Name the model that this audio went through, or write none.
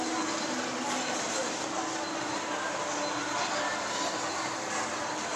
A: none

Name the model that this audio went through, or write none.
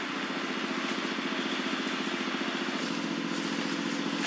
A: none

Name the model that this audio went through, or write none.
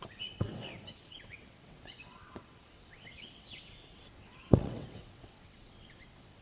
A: vocoder, WaveNeXt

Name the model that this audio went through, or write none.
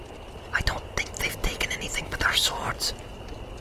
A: none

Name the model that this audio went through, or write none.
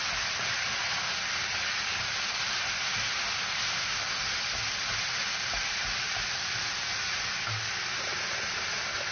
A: none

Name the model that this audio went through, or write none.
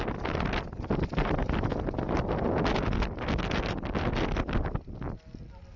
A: none